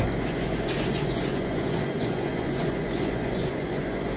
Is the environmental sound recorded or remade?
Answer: remade